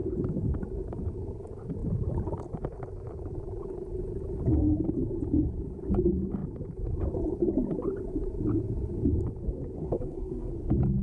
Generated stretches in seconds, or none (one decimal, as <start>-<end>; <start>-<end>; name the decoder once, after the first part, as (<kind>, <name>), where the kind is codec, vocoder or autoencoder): 9.8-10.5 (codec, SNAC)